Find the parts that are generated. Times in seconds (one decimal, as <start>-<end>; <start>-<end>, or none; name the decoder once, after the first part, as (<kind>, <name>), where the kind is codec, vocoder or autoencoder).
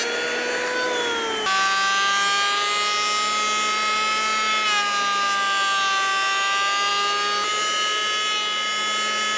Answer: none